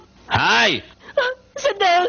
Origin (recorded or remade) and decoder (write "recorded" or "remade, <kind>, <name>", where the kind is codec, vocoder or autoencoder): recorded